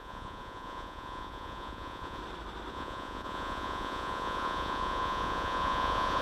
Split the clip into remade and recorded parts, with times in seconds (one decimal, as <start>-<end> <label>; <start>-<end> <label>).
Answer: 0.0-2.2 remade; 2.2-2.7 recorded; 2.7-6.2 remade